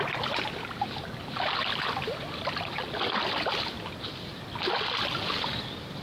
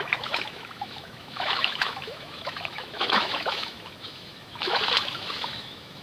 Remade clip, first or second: second